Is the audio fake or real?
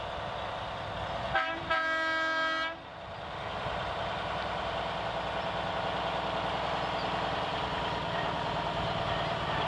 real